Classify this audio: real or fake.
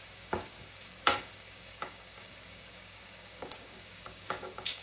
fake